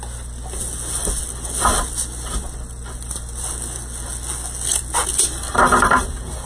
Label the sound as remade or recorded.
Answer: recorded